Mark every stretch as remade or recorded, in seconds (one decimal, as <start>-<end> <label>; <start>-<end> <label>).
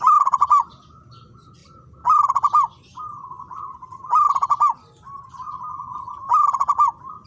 0.0-7.3 recorded